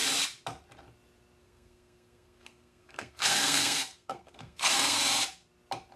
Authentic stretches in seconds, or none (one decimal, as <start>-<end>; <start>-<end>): 0.0-1.4; 5.0-6.0